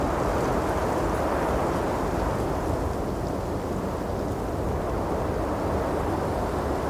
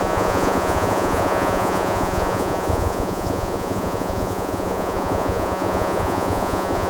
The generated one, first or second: second